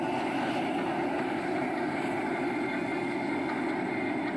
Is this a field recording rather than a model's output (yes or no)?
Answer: yes